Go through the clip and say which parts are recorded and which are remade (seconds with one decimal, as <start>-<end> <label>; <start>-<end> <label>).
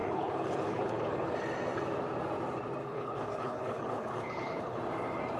0.0-1.3 remade; 1.3-2.8 recorded; 2.8-4.8 remade; 4.8-5.4 recorded